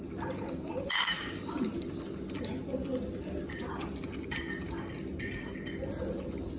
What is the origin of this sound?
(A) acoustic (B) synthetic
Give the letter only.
A